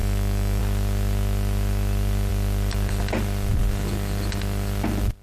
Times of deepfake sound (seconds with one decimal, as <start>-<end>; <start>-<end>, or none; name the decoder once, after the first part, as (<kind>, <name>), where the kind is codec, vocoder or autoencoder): 0.0-0.6 (autoencoder, DAC-VAE)